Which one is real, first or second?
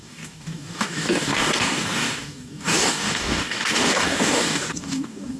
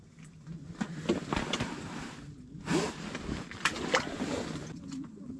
second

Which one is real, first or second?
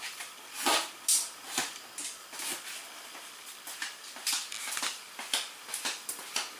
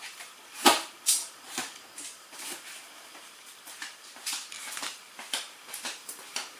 first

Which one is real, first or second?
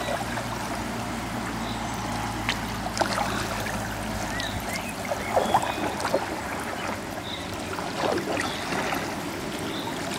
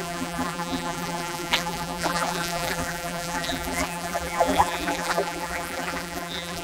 first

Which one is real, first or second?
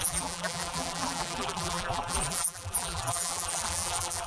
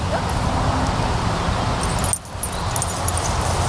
second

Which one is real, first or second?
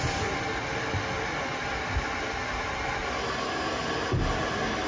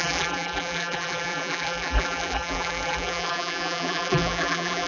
first